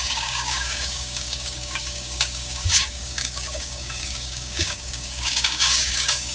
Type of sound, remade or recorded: remade